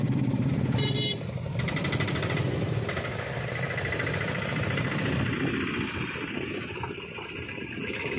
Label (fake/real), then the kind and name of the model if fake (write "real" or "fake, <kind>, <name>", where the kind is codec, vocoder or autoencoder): fake, vocoder, BigVGAN v2